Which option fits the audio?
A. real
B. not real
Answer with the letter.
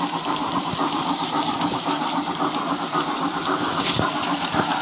B